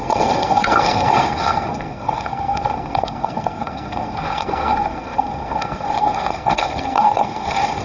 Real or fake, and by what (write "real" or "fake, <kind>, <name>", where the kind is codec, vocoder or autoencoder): fake, codec, SNAC